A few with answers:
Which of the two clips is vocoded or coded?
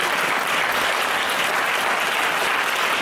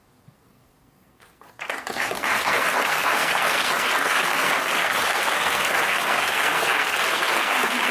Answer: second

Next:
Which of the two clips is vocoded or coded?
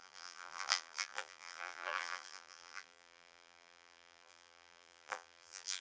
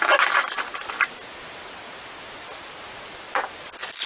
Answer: first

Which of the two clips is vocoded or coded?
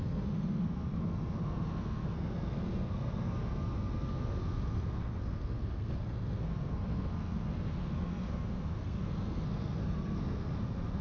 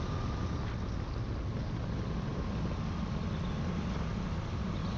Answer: first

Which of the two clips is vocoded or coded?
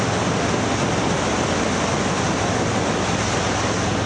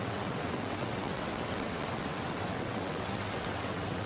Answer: second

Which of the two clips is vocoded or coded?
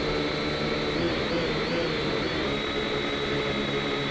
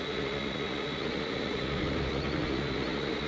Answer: second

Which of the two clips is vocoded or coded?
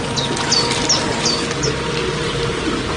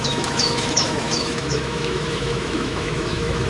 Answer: second